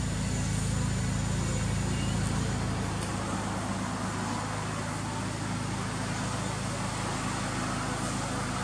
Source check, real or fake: real